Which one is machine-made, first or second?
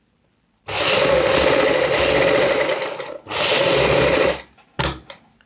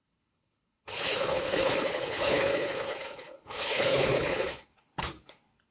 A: second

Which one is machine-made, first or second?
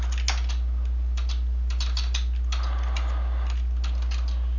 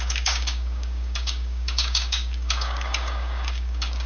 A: second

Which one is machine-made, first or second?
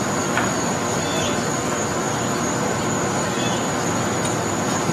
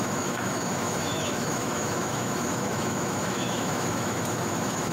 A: second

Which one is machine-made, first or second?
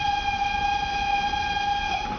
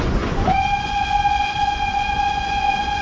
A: second